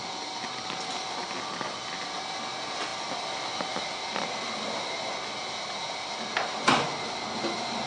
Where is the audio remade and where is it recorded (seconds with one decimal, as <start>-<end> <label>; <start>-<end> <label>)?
0.0-7.9 recorded